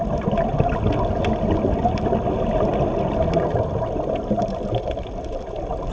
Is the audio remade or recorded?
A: recorded